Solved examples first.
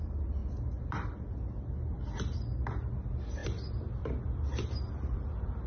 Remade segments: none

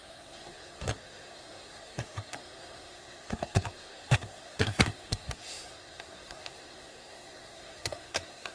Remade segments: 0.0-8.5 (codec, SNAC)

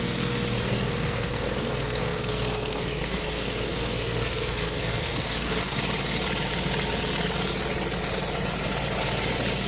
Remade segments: 0.0-5.8 (codec, SNAC)

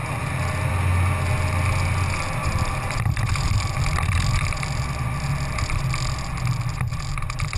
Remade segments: 2.4-3.8 (vocoder, BigVGAN v2)